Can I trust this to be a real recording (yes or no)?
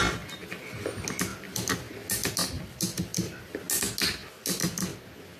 yes